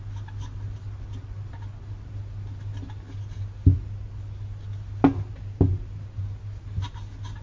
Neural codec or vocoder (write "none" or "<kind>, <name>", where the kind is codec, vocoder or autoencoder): none